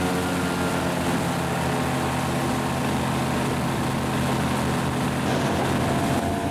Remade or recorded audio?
recorded